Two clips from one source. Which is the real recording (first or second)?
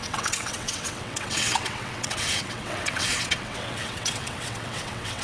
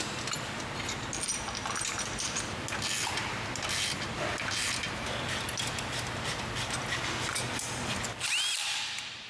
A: second